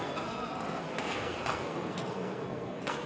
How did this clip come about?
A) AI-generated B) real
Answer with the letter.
A